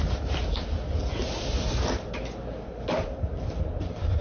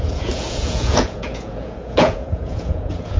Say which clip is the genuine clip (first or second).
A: first